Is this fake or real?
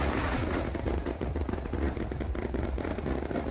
fake